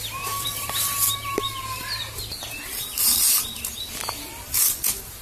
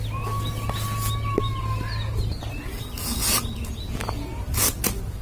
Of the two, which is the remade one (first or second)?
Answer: first